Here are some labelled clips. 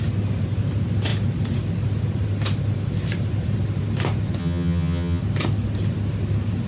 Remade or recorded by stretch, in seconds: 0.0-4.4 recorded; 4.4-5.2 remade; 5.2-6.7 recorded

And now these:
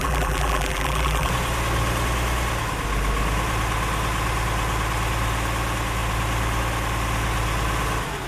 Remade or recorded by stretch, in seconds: 0.0-1.3 remade; 1.3-8.3 recorded

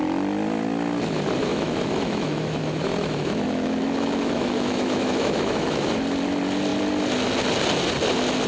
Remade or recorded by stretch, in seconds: 0.0-1.5 recorded; 1.5-5.9 remade; 5.9-8.5 recorded

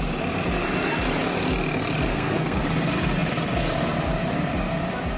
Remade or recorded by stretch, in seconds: 0.0-2.1 recorded; 2.1-2.6 remade; 2.6-5.2 recorded

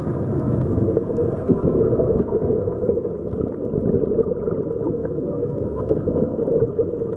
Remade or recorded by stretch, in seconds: 0.0-3.1 remade; 3.1-4.9 recorded; 4.9-6.4 remade; 6.4-7.2 recorded